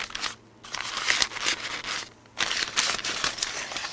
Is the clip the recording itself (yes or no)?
yes